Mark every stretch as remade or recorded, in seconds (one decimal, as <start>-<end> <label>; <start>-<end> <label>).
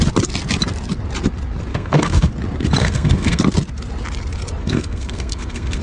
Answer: 0.0-1.7 recorded; 1.7-2.3 remade; 2.3-2.8 recorded; 2.8-3.4 remade; 3.4-4.6 recorded; 4.6-5.8 remade